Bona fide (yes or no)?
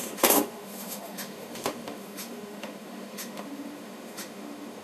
no